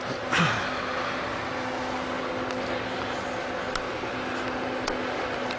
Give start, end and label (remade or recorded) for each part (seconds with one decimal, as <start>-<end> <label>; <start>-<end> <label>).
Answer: 0.0-5.6 recorded